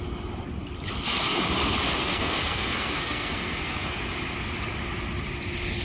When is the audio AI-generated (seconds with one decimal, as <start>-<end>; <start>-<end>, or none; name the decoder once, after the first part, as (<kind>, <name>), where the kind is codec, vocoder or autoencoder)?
2.0-4.0 (codec, SNAC)

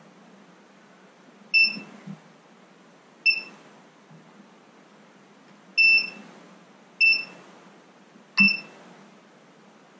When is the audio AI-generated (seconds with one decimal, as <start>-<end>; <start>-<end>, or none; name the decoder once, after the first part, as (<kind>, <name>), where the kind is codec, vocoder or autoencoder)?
none